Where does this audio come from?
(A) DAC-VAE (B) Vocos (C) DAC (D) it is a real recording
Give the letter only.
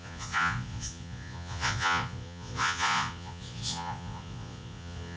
B